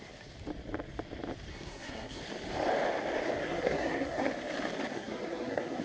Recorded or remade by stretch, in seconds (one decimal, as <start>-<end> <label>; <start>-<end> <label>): 0.0-1.5 recorded; 1.5-2.2 remade; 2.2-3.4 recorded; 3.4-4.3 remade; 4.3-4.9 recorded; 4.9-5.8 remade